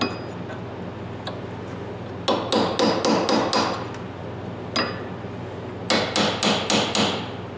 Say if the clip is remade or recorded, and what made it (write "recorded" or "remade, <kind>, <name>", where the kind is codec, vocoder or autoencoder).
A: recorded